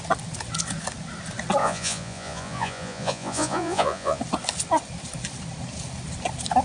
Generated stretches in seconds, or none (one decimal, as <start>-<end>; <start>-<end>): 1.6-4.2